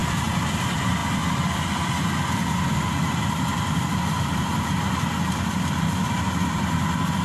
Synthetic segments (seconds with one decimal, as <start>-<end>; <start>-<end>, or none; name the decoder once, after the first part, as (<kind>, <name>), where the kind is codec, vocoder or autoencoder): none